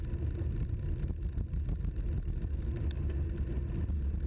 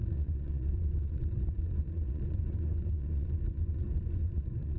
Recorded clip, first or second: first